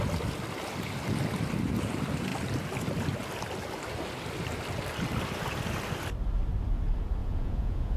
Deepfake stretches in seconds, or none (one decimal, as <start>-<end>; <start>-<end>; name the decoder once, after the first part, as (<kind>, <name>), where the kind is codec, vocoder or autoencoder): 7.2-8.0 (vocoder, Vocos)